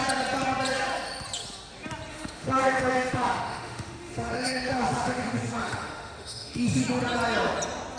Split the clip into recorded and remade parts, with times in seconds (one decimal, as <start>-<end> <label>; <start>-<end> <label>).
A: 0.0-2.1 recorded; 2.1-6.8 remade; 6.8-8.0 recorded